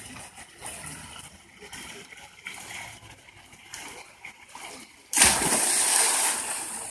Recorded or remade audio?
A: remade